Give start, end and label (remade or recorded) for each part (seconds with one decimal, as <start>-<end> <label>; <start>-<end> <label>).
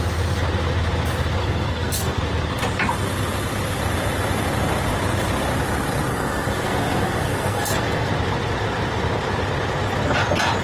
0.0-1.4 recorded; 1.4-2.2 remade; 2.2-6.1 recorded; 6.1-8.1 remade; 8.1-10.6 recorded